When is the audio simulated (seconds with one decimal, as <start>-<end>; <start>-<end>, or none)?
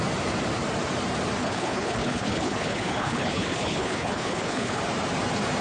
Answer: 1.4-4.8